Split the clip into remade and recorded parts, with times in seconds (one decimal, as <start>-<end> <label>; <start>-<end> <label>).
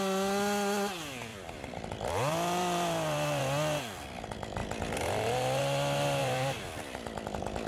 0.0-1.3 recorded; 1.3-3.4 remade; 3.4-6.2 recorded; 6.2-6.8 remade; 6.8-7.7 recorded